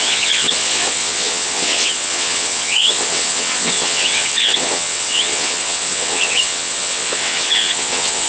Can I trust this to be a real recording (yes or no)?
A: no